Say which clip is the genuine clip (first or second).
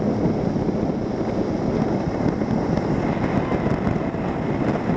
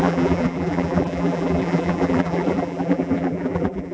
first